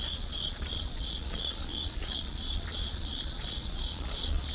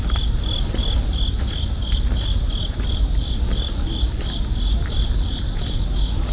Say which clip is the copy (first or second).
first